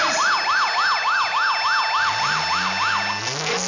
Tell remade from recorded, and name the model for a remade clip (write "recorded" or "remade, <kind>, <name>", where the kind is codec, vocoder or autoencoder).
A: recorded